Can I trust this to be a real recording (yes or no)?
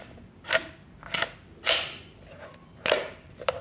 yes